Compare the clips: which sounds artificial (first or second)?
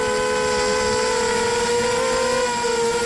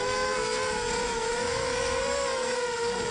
second